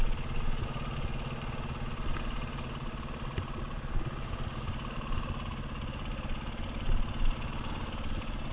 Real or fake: real